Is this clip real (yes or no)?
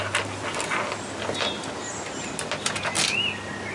yes